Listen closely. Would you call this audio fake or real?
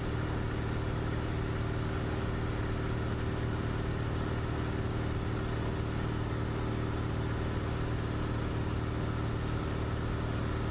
real